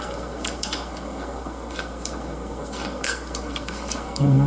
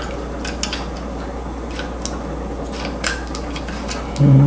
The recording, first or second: second